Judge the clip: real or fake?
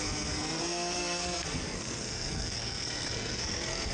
fake